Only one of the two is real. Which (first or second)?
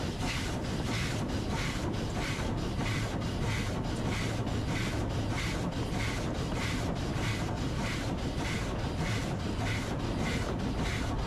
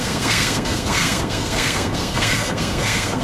first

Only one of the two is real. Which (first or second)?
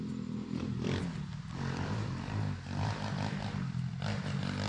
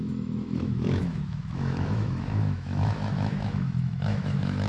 first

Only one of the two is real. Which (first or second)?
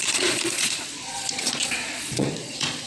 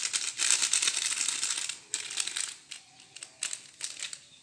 second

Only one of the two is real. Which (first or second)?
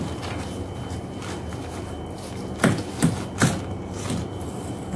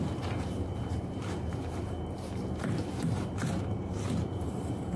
first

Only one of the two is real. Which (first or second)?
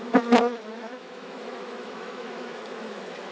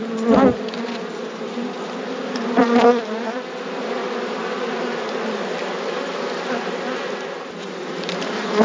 second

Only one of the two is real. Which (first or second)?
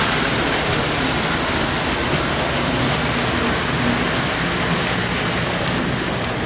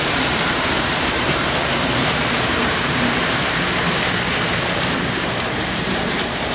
first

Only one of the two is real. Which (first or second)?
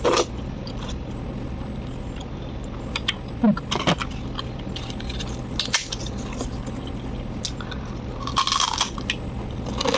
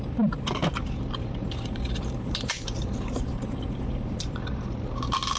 first